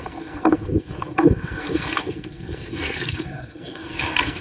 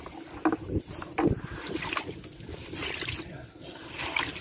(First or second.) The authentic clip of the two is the second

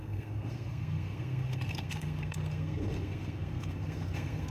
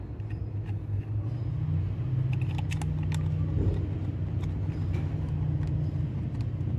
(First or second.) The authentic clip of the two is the second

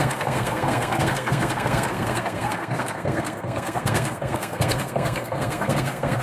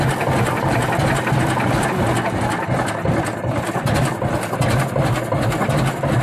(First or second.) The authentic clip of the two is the second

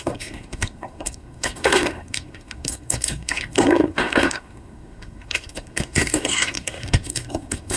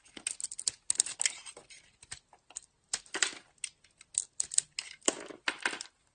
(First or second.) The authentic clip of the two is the second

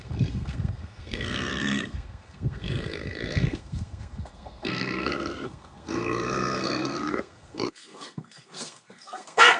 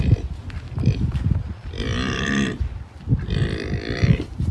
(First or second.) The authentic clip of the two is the second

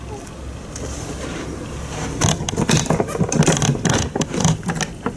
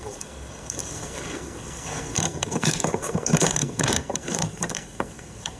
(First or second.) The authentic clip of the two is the first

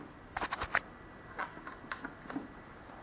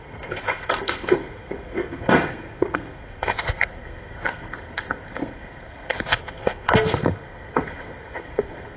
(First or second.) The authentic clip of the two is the first